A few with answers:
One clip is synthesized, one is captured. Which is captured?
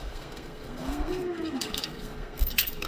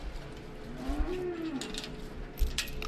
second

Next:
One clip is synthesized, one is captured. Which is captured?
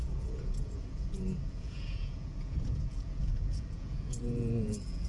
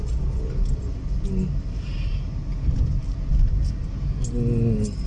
second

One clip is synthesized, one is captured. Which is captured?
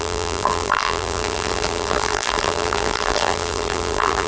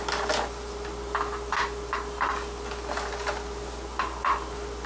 second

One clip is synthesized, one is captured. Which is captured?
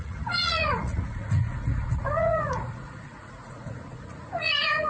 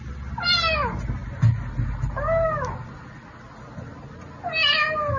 second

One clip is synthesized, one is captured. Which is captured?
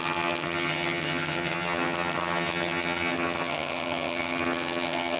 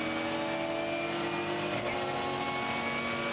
second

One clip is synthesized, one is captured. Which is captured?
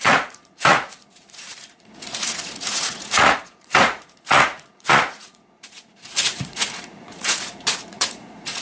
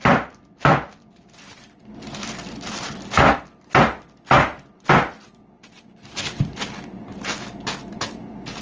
second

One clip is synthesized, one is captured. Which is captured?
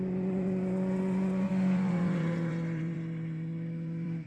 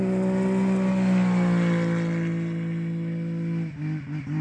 second